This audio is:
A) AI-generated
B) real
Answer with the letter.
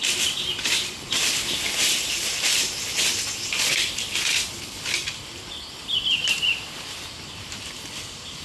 A